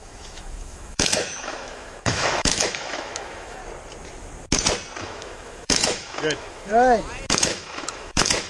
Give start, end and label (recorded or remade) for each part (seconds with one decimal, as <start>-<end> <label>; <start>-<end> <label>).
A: 0.0-3.6 remade; 3.6-5.0 recorded; 5.0-6.7 remade; 6.7-7.3 recorded; 7.3-8.5 remade